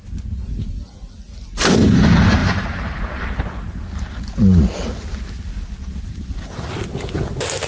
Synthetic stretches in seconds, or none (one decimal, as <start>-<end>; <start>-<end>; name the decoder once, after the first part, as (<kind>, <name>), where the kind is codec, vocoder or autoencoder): 2.4-3.4 (vocoder, BigVGAN v2); 5.8-6.7